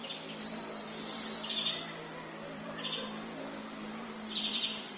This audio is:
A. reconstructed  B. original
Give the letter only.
A